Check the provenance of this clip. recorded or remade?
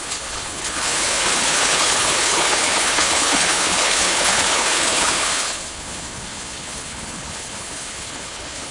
remade